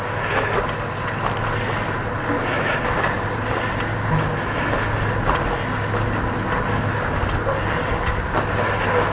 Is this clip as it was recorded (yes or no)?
yes